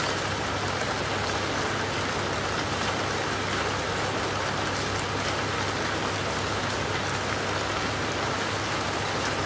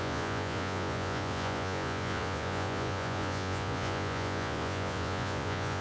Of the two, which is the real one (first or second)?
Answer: first